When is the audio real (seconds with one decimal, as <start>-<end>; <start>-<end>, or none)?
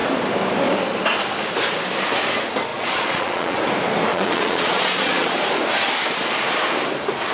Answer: 0.0-2.7; 3.6-4.1; 5.4-7.3